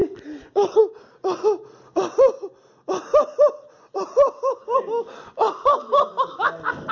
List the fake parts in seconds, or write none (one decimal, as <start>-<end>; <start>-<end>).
none

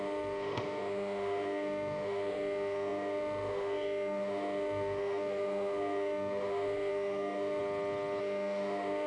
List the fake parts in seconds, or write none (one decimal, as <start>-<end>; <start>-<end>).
0.0-7.6; 8.2-9.1

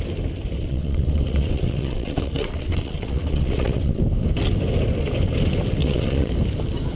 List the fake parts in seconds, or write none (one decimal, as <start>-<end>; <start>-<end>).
0.6-4.0; 5.8-6.3

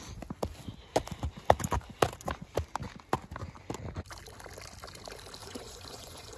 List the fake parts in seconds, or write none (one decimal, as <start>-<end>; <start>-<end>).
5.4-6.4

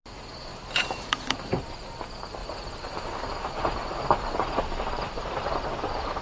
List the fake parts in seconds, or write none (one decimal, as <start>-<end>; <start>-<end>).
0.5-1.9; 2.4-6.2

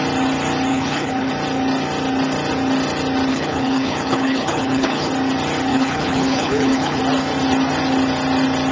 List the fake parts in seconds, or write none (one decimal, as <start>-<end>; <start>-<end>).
0.7-1.3; 3.3-5.1; 5.7-7.0

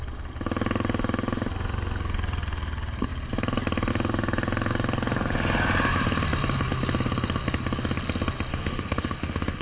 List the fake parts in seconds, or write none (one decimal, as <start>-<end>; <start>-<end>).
8.5-9.6

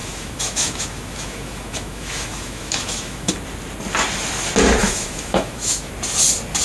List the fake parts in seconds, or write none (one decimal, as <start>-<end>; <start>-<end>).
0.0-3.3; 4.8-5.9